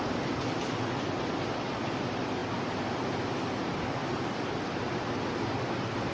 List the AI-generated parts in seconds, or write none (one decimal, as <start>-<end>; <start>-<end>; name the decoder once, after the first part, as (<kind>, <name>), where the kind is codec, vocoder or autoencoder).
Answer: none